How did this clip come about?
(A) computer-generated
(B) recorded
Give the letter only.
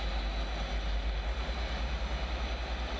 B